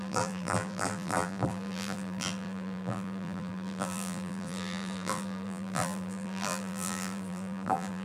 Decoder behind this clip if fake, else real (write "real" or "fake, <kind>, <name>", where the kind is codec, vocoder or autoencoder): fake, vocoder, BigVGAN v2